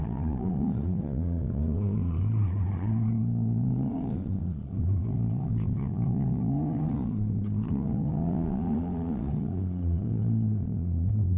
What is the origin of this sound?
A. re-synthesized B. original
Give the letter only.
A